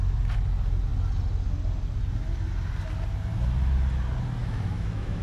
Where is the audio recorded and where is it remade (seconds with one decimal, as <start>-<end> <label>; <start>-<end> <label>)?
0.0-4.4 recorded; 4.4-5.2 remade